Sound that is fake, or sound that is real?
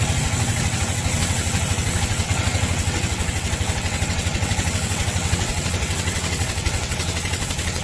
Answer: fake